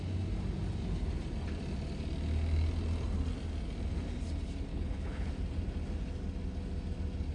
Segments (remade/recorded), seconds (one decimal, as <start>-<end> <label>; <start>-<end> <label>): 0.0-4.7 recorded; 4.7-5.3 remade; 5.3-7.3 recorded